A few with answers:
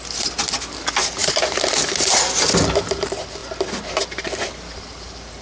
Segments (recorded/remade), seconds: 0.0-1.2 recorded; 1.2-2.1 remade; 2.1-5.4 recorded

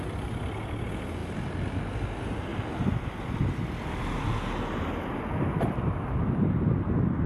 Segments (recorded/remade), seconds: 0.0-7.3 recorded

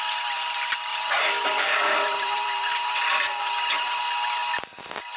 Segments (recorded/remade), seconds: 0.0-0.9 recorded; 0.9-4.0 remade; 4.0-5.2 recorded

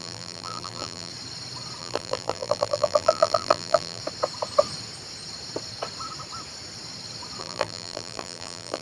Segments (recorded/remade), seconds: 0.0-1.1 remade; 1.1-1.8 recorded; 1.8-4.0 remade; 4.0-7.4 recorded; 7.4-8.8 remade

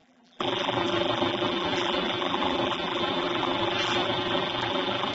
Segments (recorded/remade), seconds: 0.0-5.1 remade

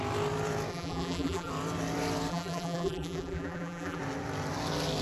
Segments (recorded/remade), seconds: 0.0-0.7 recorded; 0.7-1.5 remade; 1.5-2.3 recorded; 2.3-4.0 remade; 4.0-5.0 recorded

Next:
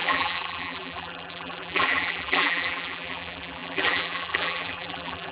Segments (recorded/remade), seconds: 0.0-5.3 remade

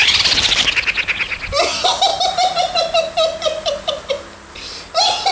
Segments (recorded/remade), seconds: 0.0-2.1 recorded; 2.1-4.1 remade; 4.1-5.3 recorded